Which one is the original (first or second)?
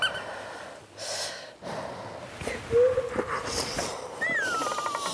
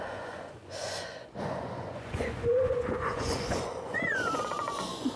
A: first